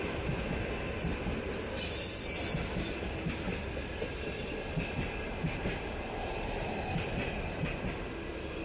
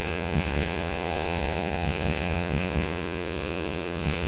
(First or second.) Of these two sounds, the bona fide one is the first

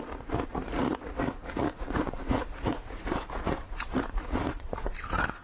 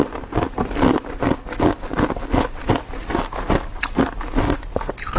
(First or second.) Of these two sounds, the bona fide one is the second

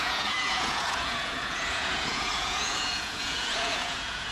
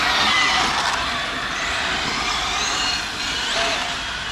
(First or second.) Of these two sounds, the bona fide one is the second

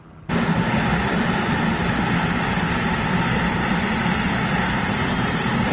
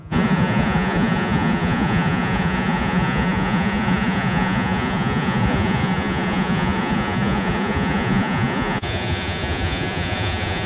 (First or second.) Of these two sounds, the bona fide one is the first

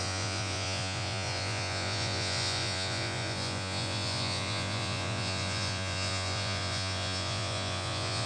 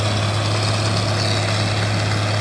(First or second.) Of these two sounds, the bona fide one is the second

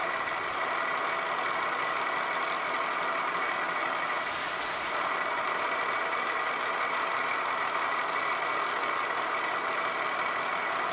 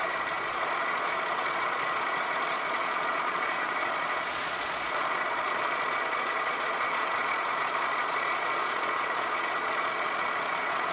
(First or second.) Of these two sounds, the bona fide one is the first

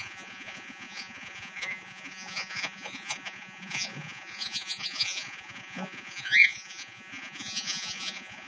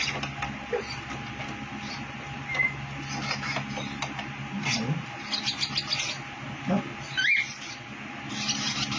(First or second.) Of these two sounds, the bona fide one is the second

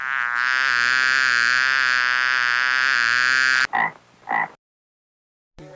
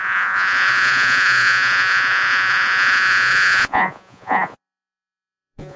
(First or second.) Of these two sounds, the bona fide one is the first